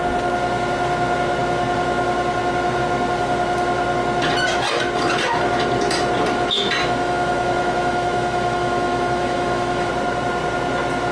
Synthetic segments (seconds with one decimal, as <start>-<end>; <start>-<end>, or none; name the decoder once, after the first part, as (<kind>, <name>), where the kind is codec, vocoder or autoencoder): 6.8-9.9 (autoencoder, DAC-VAE)